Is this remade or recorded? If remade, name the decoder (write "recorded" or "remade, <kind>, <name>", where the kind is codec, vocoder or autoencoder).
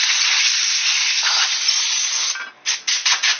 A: recorded